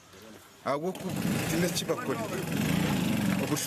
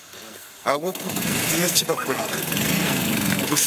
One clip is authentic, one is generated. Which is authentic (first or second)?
first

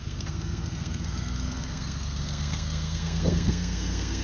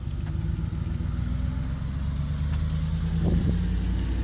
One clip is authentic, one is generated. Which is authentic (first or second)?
second